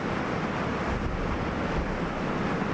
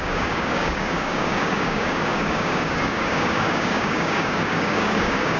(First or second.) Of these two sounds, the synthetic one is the second